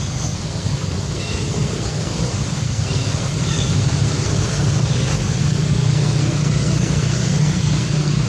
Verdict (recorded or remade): remade